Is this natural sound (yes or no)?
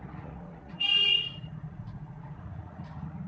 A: no